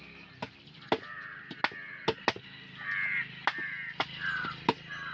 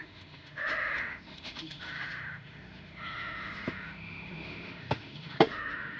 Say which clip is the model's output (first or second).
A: second